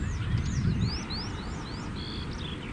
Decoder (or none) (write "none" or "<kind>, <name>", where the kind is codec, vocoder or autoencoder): none